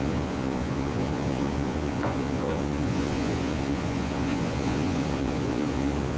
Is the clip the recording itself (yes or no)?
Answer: no